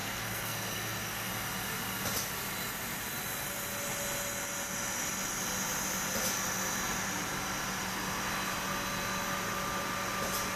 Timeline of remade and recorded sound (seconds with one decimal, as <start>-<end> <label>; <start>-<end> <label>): 0.0-1.3 remade; 1.3-10.6 recorded